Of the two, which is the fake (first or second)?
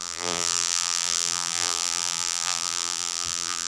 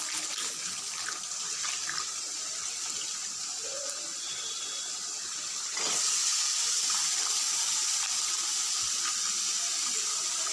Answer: first